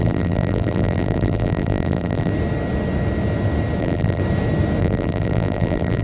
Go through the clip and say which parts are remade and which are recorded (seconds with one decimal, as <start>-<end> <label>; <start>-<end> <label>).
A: 0.0-2.3 remade; 2.3-3.8 recorded; 3.8-4.2 remade; 4.2-4.8 recorded; 4.8-6.0 remade